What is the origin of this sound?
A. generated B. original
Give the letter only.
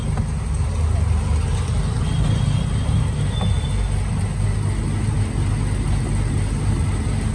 B